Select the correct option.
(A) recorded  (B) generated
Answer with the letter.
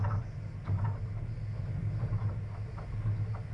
A